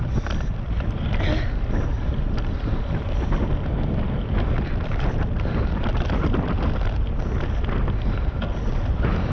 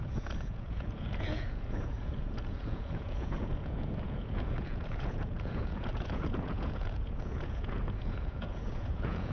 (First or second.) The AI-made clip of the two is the second